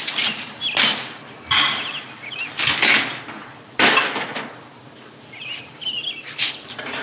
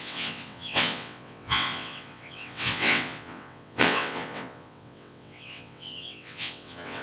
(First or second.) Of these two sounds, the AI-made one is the second